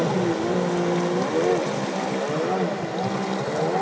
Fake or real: real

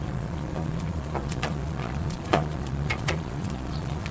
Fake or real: fake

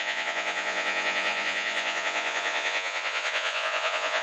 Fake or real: fake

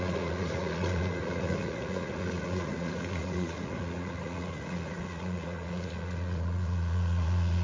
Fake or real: fake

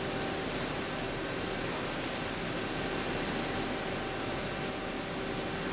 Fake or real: real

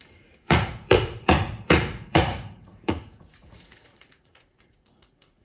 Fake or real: fake